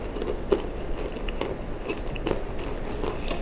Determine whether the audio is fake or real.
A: real